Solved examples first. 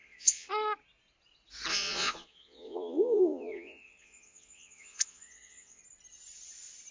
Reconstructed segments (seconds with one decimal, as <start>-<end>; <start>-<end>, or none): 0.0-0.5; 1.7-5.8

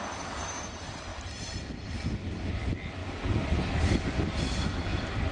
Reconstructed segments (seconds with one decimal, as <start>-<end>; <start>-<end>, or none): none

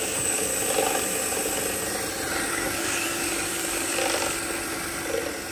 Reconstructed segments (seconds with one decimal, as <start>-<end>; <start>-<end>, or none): 0.0-0.5; 2.5-4.0

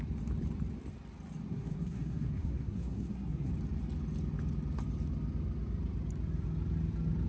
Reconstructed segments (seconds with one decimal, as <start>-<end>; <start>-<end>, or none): 1.5-3.5

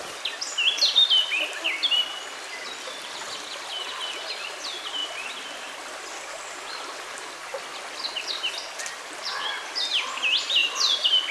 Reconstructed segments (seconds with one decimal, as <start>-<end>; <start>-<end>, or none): 1.8-3.3

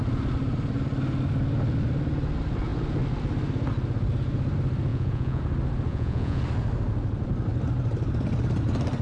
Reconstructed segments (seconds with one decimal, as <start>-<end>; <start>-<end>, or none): 4.9-5.4; 5.9-6.4